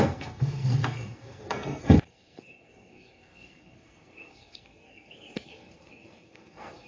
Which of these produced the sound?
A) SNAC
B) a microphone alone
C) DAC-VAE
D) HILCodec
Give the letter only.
A